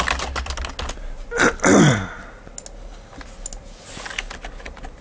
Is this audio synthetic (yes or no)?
no